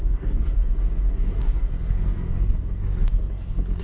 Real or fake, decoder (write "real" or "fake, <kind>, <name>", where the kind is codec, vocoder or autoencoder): fake, codec, SNAC